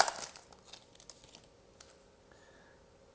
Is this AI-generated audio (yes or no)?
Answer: no